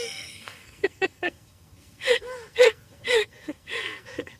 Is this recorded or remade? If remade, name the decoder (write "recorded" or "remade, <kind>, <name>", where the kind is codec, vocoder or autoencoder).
remade, codec, SNAC